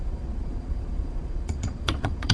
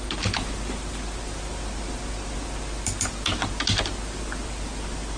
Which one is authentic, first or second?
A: second